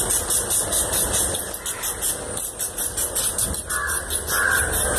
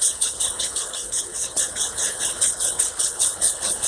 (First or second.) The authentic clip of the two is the first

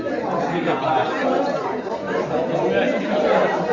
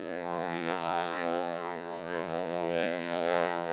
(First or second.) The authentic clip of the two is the first